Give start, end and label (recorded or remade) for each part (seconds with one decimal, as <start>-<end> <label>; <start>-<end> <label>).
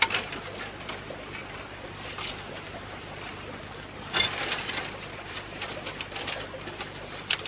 0.0-7.5 recorded